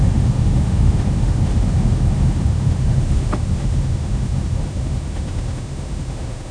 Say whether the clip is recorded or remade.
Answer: remade